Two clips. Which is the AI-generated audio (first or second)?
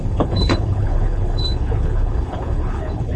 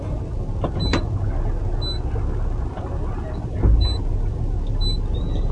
first